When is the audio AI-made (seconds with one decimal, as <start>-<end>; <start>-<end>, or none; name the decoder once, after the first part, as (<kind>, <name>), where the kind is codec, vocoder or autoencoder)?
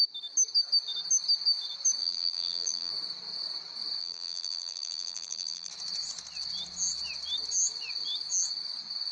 2.0-2.9 (vocoder, BigVGAN v2); 4.0-5.7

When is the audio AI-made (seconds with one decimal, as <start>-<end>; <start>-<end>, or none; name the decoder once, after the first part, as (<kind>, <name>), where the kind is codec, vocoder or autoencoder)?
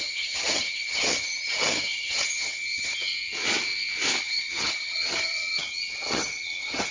0.0-3.0 (vocoder, HiFi-GAN); 4.2-6.9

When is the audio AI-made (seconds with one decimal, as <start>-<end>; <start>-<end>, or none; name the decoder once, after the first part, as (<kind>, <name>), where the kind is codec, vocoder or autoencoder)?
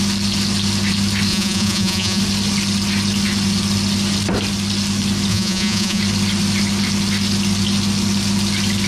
1.3-2.2 (vocoder, Vocos); 5.3-6.0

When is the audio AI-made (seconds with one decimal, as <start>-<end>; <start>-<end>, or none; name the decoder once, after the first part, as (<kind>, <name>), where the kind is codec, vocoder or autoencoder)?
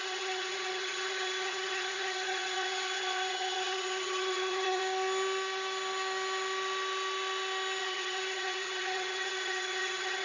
0.0-4.8 (vocoder, HiFi-GAN); 7.8-10.2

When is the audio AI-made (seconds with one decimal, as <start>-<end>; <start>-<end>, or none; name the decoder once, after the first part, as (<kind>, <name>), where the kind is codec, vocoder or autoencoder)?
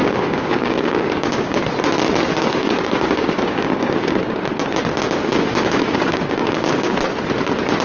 0.0-1.6 (codec, DAC); 2.3-4.2; 5.3-6.9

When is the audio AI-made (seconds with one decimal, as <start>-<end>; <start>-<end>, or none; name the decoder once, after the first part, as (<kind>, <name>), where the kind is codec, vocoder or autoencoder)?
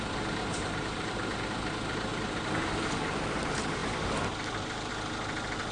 0.4-1.4 (vocoder, BigVGAN v2); 2.1-3.4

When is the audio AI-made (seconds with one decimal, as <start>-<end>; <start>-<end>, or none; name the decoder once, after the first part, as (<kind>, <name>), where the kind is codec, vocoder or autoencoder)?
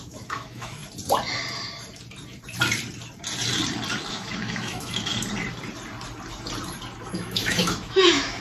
0.0-0.8 (autoencoder, DAC-VAE); 4.1-5.1; 7.1-8.4